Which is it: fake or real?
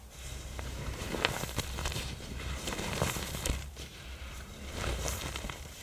fake